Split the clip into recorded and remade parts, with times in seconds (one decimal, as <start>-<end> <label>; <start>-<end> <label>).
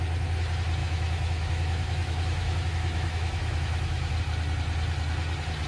0.0-0.8 recorded; 0.8-4.2 remade; 4.2-5.7 recorded